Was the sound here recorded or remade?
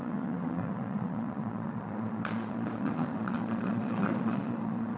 remade